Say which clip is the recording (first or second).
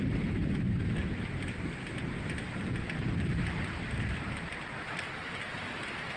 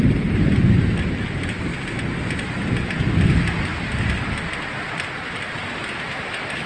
second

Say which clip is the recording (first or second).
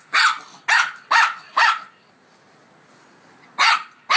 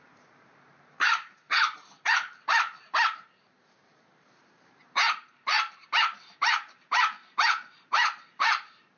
first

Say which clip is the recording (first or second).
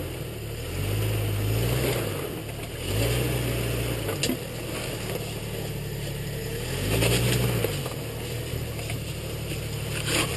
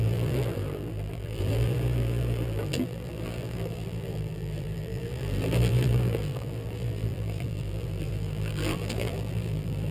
first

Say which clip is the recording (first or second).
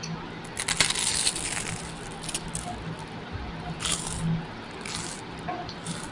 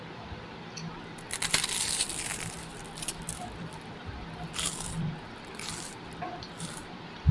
first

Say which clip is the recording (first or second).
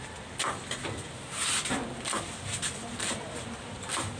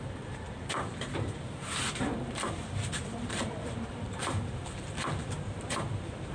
first